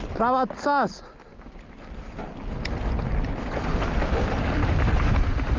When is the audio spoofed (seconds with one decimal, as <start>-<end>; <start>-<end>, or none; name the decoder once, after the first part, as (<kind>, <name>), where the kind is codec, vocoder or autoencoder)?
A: none